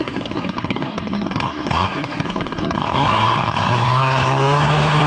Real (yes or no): no